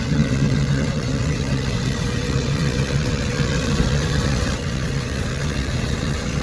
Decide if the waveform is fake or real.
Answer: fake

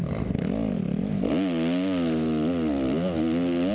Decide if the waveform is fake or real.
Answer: real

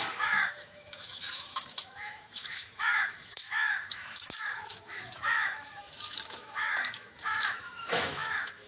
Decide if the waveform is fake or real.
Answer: fake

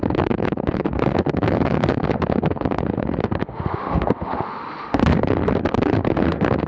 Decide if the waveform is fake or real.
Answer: fake